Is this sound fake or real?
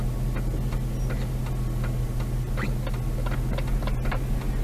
real